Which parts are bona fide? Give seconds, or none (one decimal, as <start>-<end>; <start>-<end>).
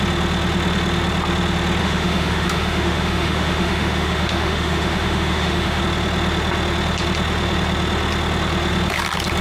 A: 0.0-1.8; 5.8-9.4